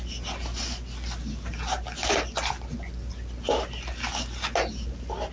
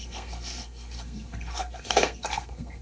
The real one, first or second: first